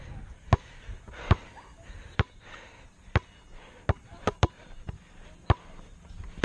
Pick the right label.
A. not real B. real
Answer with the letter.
B